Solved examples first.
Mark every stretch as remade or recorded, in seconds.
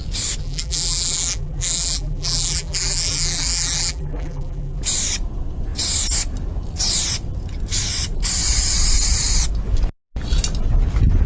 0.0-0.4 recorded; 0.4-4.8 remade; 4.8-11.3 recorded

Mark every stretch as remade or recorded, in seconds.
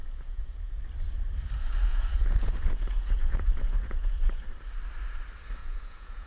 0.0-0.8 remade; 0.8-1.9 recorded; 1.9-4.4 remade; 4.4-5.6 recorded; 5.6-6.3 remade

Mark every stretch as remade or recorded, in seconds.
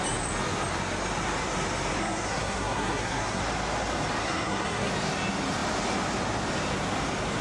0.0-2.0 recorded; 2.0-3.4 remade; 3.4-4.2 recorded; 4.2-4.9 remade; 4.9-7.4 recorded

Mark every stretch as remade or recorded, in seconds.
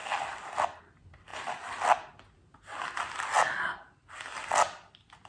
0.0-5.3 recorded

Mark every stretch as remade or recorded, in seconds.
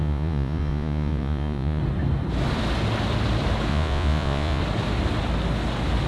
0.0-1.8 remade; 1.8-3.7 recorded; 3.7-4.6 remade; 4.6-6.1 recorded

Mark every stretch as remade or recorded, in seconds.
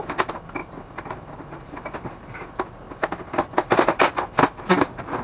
0.0-5.2 recorded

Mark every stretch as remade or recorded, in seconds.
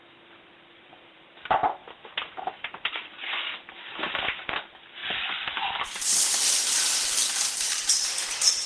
0.0-8.7 remade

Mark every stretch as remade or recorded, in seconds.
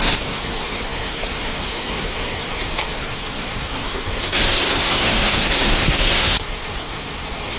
0.0-7.6 remade